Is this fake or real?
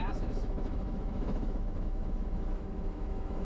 fake